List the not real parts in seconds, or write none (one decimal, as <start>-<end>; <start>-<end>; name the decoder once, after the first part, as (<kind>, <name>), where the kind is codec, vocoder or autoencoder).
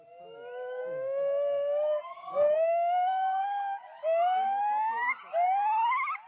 0.8-4.6 (codec, DAC)